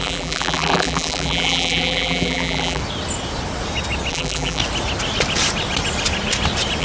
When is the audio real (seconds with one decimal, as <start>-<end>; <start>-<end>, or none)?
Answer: 2.8-4.1; 4.6-6.8